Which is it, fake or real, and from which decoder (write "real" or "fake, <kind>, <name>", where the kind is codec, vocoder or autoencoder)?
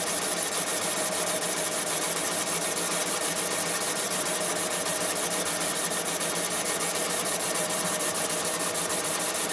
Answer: fake, vocoder, BigVGAN v2